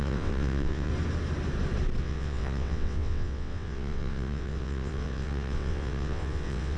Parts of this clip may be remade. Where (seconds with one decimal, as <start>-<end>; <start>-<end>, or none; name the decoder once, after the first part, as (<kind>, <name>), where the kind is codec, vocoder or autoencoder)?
0.0-0.9 (vocoder, WaveNeXt); 2.0-6.8